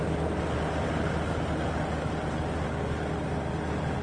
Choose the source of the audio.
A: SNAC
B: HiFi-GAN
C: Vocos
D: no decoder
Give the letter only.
D